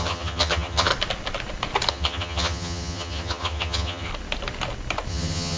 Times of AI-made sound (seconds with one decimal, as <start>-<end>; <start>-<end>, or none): 0.0-0.9; 1.9-4.1; 5.1-5.6